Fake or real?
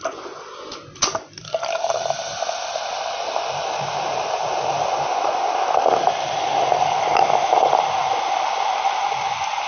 real